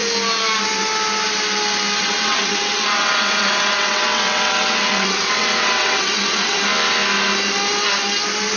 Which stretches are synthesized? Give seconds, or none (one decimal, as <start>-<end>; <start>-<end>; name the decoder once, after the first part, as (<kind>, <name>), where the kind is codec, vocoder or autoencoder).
2.0-6.6 (vocoder, WaveNeXt)

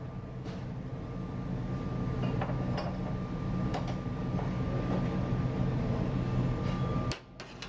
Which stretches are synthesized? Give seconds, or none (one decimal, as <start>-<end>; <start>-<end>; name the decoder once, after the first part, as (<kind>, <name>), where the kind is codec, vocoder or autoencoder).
none

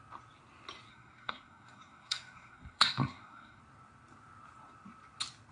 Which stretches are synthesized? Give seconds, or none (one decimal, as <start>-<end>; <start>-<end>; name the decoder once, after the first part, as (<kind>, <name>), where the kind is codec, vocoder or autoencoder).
0.9-3.6 (codec, SNAC)

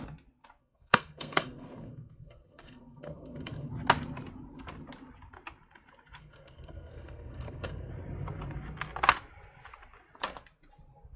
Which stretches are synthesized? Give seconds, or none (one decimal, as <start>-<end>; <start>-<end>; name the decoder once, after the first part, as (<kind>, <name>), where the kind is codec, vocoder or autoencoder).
0.6-3.7 (codec, SNAC); 6.2-7.9